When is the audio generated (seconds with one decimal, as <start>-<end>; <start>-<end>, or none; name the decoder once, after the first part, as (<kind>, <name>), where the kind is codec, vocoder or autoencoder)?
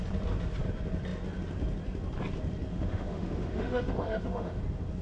2.7-4.6 (autoencoder, DAC-VAE)